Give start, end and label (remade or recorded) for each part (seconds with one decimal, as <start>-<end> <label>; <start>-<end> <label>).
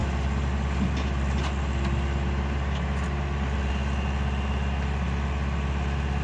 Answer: 0.0-6.2 recorded